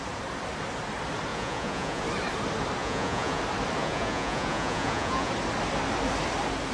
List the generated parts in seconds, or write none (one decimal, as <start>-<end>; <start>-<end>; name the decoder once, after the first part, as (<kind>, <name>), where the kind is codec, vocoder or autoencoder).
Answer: 1.3-2.0 (vocoder, Vocos); 2.8-3.4; 3.8-5.3